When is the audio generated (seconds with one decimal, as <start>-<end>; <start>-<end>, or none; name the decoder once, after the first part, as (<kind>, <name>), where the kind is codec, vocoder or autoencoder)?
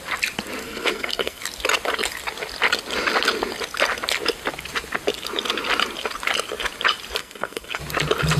0.6-1.4 (codec, SNAC); 7.2-7.8